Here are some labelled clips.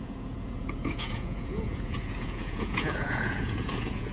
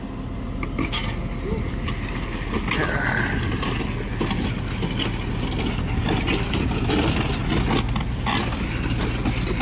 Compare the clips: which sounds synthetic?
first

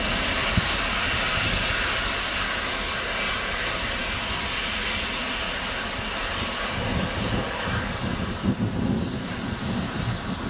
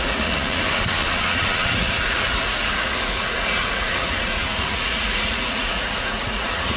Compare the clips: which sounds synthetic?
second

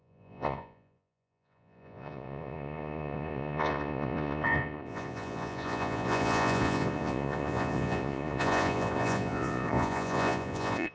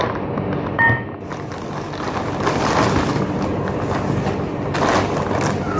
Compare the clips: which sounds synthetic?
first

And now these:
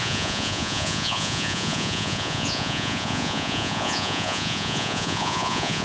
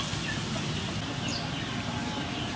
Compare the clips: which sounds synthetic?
first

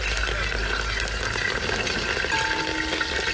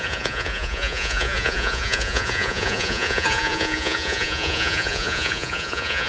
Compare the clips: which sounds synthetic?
second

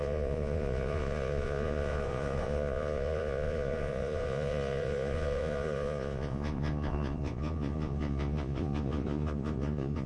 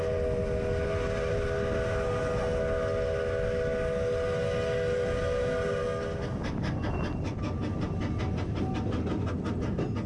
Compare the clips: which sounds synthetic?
first